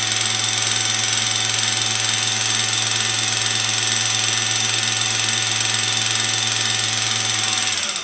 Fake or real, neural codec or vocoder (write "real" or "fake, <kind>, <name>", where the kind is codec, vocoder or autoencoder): real